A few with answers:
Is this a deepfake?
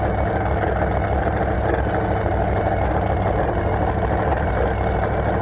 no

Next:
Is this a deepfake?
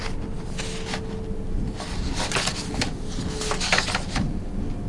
no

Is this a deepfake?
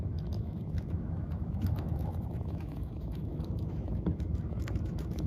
yes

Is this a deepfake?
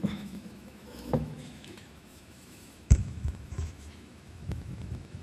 yes